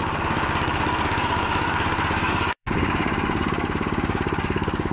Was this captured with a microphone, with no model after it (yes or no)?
no